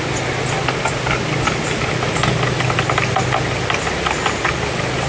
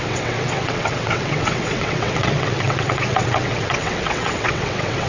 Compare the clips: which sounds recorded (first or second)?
first